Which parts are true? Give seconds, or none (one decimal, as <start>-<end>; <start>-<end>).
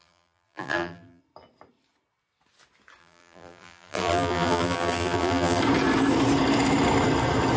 1.2-3.0; 5.6-7.6